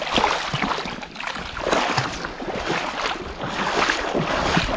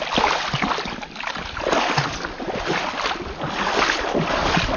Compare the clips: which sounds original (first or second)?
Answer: second